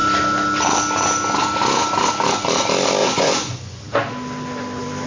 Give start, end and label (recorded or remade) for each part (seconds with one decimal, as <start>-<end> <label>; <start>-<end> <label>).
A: 0.0-3.0 recorded; 3.0-3.8 remade; 3.8-5.1 recorded